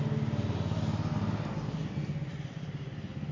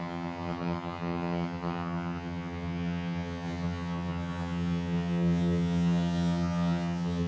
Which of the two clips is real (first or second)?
first